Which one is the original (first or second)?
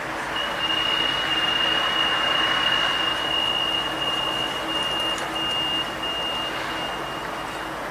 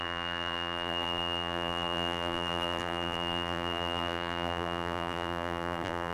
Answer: first